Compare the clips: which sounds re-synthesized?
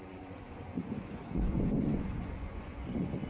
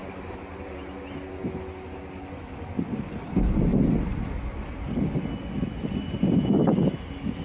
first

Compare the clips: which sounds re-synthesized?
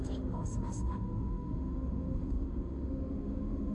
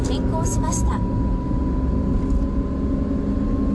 first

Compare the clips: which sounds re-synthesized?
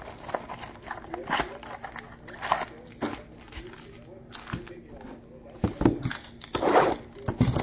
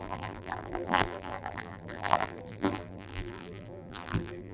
second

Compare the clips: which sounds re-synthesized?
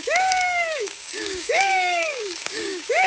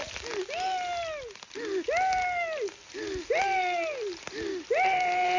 first